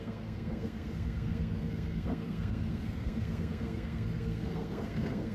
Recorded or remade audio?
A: remade